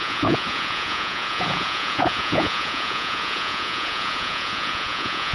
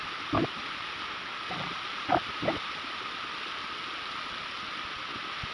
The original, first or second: second